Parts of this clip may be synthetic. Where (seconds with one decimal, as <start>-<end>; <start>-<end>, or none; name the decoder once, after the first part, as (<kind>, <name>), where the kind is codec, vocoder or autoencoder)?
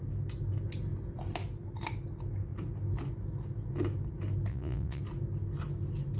4.5-5.0 (vocoder, Vocos)